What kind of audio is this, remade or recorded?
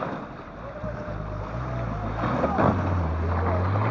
recorded